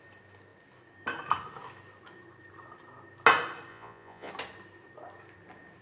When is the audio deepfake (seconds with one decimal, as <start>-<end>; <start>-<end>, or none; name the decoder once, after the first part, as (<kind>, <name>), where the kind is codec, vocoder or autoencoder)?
3.7-4.3 (vocoder, Vocos)